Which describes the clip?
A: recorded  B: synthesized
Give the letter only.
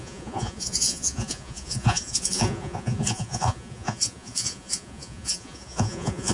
B